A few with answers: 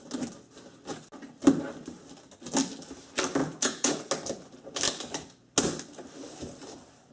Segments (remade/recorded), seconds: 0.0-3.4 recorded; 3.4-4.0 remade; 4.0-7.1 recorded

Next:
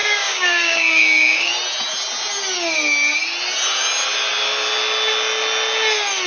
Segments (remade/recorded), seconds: 0.0-1.5 remade; 1.5-6.3 recorded